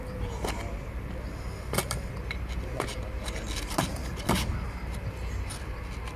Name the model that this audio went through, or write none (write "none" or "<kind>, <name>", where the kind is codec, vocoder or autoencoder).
none